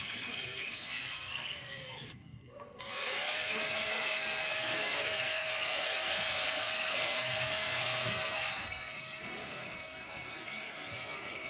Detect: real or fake fake